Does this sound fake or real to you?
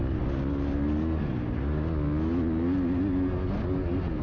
real